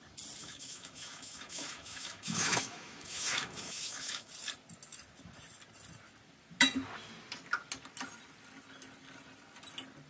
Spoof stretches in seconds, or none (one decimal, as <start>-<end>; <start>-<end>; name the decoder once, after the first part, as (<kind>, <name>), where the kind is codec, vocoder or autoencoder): 0.4-4.3 (autoencoder, DAC-VAE)